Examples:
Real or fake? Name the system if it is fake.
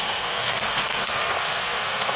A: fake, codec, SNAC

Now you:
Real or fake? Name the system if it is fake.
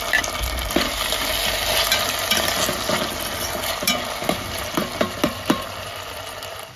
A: real